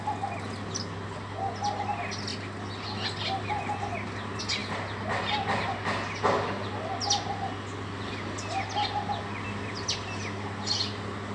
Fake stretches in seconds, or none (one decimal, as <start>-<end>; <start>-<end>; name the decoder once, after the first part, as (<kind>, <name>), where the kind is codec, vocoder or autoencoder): none